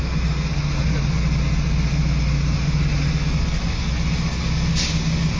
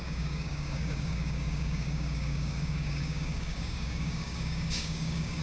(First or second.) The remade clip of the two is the second